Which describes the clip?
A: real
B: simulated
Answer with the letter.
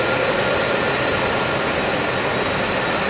A